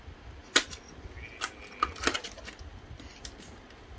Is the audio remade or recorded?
recorded